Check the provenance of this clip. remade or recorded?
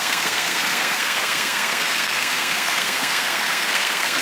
remade